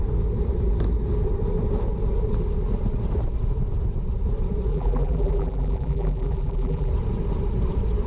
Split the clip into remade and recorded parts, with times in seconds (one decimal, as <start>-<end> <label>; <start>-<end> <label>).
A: 0.0-4.7 recorded; 4.7-6.9 remade; 6.9-8.1 recorded